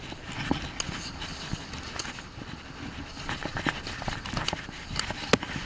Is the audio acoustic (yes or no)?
yes